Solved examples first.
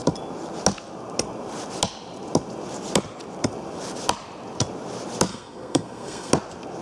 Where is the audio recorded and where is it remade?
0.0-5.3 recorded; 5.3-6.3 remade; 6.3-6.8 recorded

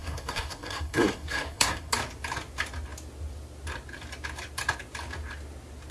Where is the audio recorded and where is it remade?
0.0-1.9 remade; 1.9-5.9 recorded